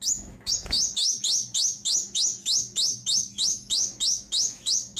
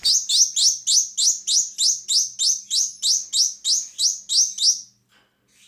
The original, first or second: second